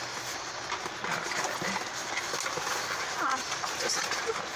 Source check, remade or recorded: recorded